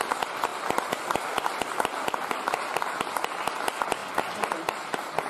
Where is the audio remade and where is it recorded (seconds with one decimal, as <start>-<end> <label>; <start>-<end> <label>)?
0.0-5.3 recorded